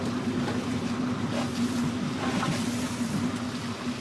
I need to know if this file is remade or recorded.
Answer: recorded